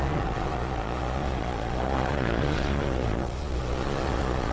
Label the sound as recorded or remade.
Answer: remade